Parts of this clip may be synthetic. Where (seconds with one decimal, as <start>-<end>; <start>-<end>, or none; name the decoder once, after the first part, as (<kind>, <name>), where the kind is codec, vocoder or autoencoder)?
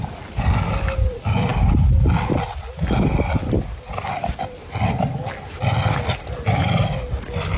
none